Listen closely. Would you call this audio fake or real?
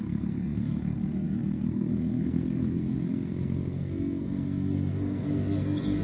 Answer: fake